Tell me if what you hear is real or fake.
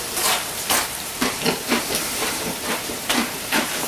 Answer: fake